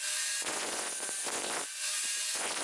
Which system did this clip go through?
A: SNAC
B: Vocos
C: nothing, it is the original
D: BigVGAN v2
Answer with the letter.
B